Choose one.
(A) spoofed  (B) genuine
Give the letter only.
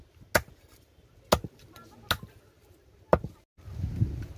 B